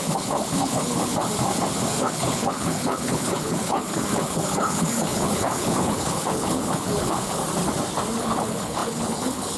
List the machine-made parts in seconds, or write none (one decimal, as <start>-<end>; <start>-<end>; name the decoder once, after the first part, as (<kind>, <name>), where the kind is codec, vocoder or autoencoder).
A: 0.0-1.3 (codec, HILCodec); 2.0-7.4; 8.2-9.6